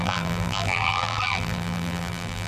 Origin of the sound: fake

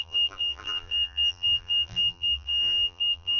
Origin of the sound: fake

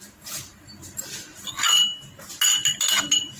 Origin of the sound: real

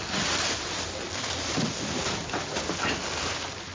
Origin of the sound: real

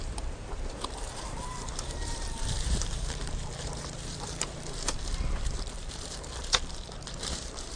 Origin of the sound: fake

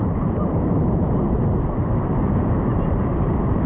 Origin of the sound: fake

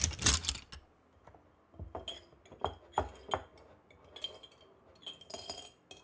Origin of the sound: real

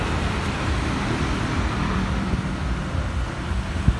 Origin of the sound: fake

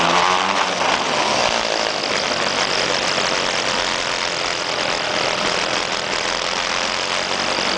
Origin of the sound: real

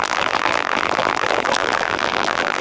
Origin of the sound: fake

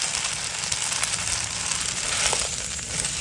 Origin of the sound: real